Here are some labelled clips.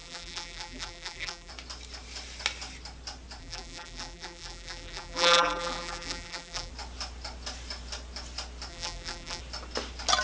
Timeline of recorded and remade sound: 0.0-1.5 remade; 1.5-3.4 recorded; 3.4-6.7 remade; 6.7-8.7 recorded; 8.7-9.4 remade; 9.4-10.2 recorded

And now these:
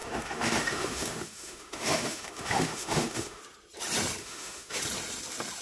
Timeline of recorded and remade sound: 0.0-3.4 remade; 3.4-4.2 recorded; 4.2-4.8 remade; 4.8-5.6 recorded

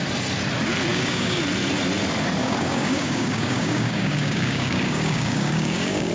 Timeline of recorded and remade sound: 0.0-0.9 recorded; 0.9-1.4 remade; 1.4-2.4 recorded; 2.4-6.1 remade

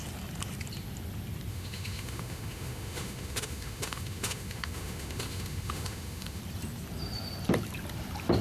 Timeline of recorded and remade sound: 0.0-1.5 recorded; 1.5-6.4 remade; 6.4-8.4 recorded

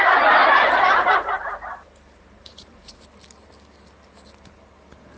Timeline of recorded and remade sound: 0.0-0.4 recorded; 0.4-3.0 remade; 3.0-5.2 recorded

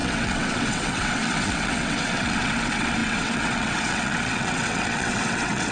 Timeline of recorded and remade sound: 0.0-5.7 remade

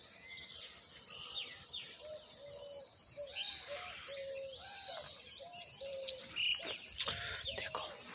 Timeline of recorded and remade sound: 0.0-8.1 recorded